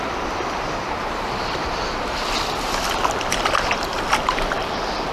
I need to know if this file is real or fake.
real